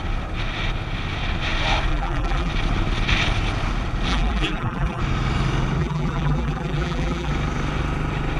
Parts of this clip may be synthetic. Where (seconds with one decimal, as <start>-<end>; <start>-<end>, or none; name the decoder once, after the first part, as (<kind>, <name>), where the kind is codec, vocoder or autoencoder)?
1.9-2.5 (vocoder, BigVGAN v2); 4.1-5.0; 5.8-7.3